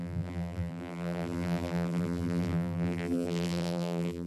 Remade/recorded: remade